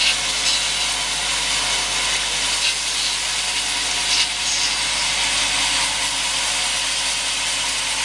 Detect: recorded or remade recorded